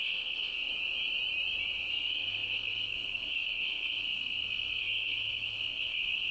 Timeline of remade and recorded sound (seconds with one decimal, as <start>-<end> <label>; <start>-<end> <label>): 0.0-0.7 remade; 0.7-1.9 recorded; 1.9-6.3 remade